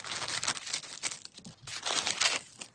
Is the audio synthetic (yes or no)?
no